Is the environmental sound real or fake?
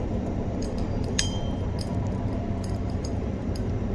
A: fake